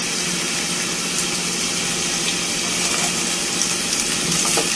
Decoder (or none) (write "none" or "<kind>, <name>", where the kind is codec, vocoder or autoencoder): none